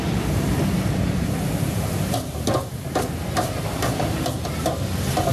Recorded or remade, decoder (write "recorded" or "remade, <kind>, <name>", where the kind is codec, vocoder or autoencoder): recorded